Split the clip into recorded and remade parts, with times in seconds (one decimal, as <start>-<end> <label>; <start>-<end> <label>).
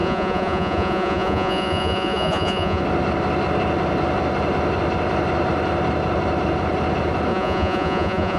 0.0-2.8 remade; 2.8-7.3 recorded; 7.3-8.4 remade